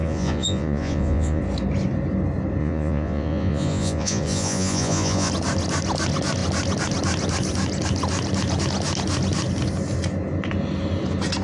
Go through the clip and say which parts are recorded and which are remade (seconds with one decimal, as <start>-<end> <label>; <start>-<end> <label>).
0.0-1.4 remade; 1.4-2.6 recorded; 2.6-5.3 remade; 5.3-11.4 recorded

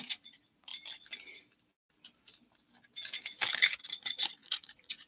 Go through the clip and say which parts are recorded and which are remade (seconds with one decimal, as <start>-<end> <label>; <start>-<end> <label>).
0.0-0.7 remade; 0.7-3.8 recorded; 3.8-5.1 remade

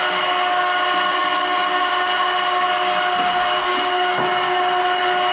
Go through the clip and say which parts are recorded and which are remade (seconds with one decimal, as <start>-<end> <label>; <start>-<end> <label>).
0.0-5.3 recorded

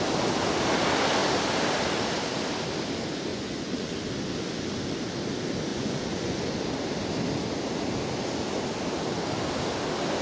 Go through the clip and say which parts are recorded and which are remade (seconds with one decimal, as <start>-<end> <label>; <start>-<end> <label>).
0.0-3.3 recorded; 3.3-3.9 remade; 3.9-5.7 recorded; 5.7-6.5 remade; 6.5-10.2 recorded

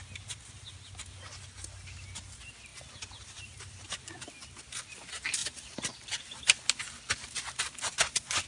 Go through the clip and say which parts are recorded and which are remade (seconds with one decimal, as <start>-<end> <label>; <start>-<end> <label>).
0.0-8.5 recorded